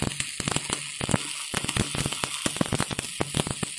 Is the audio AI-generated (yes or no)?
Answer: no